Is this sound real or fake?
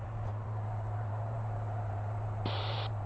fake